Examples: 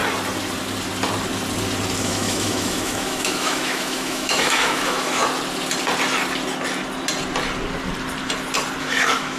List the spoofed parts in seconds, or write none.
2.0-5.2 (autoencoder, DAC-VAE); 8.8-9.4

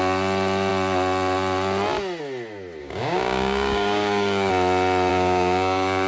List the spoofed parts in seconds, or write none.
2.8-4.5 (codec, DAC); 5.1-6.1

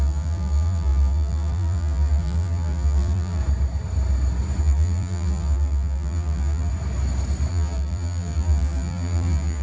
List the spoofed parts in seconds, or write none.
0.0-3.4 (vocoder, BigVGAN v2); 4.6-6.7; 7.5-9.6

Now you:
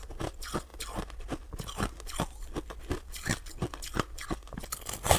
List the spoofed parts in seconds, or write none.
none

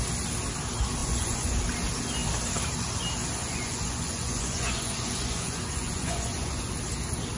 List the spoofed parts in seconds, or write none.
1.0-1.6 (vocoder, Vocos); 3.4-6.7

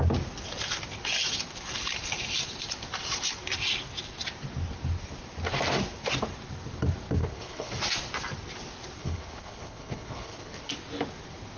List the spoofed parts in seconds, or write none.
7.2-7.7 (codec, HILCodec); 9.0-10.7